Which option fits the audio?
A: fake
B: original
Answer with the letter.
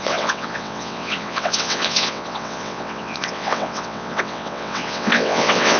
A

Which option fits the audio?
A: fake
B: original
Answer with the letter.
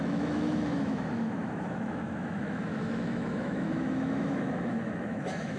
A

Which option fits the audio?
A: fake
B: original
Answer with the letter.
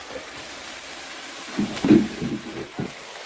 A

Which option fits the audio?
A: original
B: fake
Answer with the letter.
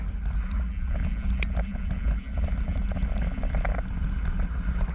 A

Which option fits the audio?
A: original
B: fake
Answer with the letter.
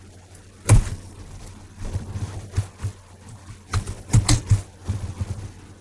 A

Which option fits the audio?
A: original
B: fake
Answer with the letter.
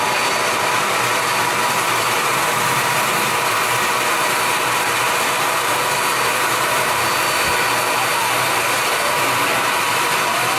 A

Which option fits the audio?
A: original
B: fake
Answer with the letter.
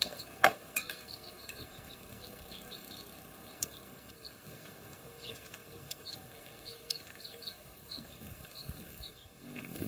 B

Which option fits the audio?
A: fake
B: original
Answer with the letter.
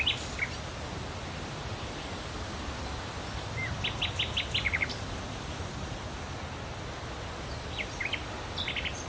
B